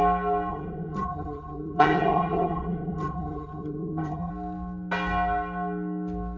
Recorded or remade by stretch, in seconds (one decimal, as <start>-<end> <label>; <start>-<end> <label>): 0.0-0.5 recorded; 0.5-4.3 remade; 4.3-6.4 recorded